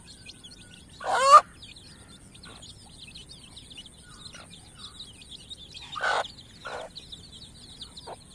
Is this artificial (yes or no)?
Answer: no